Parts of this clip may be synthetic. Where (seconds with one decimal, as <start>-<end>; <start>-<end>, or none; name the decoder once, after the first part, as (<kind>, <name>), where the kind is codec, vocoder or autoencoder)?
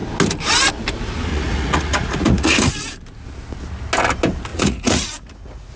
1.3-2.7 (vocoder, Vocos); 4.5-5.8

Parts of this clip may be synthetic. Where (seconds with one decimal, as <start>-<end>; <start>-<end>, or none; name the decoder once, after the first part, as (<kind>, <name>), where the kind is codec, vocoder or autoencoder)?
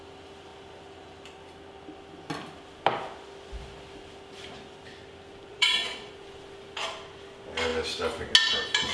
5.5-6.1 (vocoder, Vocos)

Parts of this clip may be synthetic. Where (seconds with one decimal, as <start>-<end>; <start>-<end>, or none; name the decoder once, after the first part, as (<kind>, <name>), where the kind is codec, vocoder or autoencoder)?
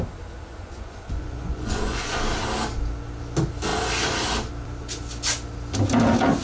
0.5-2.2 (vocoder, Vocos)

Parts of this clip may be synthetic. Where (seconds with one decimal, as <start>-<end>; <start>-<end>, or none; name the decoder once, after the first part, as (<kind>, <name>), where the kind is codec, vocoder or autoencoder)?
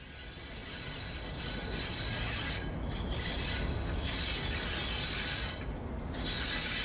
none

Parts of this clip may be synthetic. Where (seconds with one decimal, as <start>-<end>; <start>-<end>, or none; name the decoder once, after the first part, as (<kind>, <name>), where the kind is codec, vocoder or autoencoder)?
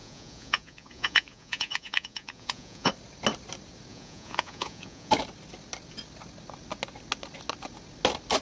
0.0-2.9 (vocoder, Vocos); 3.9-5.1